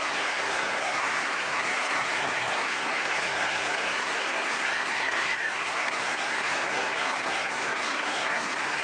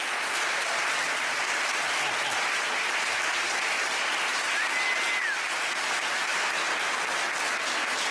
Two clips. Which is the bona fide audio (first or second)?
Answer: second